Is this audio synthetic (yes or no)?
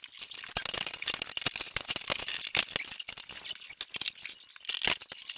no